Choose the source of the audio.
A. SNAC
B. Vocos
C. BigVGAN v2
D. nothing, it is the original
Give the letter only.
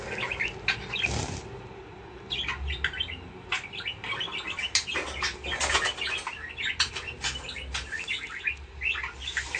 D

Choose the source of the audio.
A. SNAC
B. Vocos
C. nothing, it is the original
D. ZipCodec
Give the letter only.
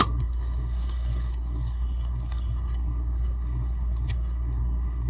A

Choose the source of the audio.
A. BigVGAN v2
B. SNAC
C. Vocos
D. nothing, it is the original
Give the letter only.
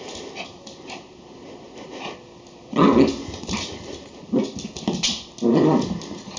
D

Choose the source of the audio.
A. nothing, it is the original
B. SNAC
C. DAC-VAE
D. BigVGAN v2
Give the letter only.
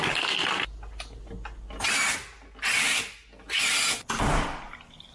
A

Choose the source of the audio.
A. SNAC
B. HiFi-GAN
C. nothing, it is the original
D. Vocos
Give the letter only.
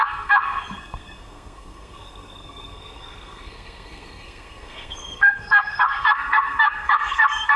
A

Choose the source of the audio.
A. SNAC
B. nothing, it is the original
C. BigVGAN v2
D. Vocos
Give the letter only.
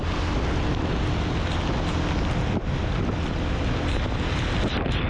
B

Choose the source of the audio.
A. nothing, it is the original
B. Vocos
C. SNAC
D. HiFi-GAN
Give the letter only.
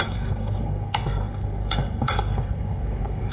C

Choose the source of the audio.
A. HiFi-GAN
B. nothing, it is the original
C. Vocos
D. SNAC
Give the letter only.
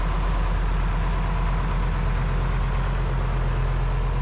B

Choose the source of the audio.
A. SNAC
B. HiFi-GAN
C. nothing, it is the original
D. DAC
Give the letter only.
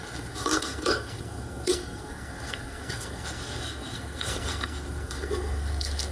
A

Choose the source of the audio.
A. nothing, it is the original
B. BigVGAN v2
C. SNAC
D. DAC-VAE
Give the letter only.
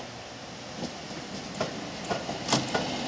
A